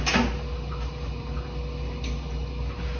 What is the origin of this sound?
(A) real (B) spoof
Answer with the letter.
A